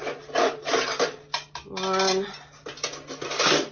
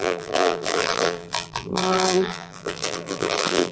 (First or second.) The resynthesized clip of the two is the second